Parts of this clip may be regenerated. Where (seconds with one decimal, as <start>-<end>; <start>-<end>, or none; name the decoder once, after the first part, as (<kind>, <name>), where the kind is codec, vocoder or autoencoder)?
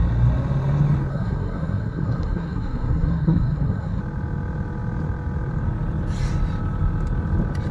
1.1-4.0 (codec, SNAC)